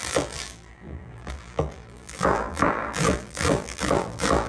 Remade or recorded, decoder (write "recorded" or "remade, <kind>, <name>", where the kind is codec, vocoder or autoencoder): remade, vocoder, BigVGAN v2